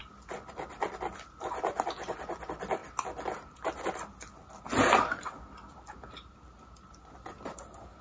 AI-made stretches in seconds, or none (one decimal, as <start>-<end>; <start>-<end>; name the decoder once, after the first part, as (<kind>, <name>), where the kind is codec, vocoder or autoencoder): none